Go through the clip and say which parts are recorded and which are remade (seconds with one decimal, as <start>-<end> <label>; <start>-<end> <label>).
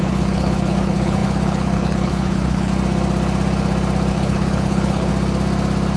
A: 0.0-2.7 remade; 2.7-4.1 recorded; 4.1-5.1 remade; 5.1-6.0 recorded